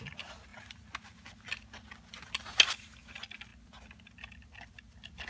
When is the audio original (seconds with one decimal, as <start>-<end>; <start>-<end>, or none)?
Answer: 0.0-5.3